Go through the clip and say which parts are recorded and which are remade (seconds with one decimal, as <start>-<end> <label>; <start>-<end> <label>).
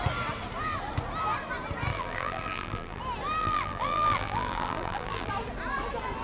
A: 0.0-1.9 recorded; 1.9-3.0 remade; 3.0-3.4 recorded; 3.4-5.3 remade; 5.3-6.2 recorded